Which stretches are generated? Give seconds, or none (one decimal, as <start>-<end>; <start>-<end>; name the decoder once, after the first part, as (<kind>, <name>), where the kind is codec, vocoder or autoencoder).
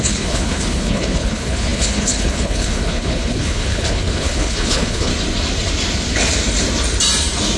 0.0-5.1 (codec, HILCodec)